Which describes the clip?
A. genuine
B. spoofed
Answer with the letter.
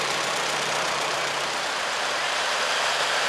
B